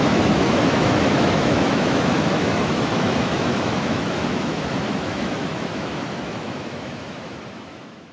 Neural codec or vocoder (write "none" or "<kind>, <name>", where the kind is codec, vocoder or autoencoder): autoencoder, DAC-VAE